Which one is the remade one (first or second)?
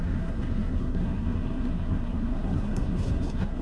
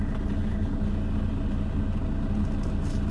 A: first